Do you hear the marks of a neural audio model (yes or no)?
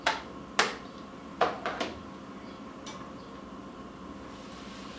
no